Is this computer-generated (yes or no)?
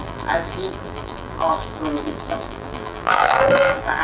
yes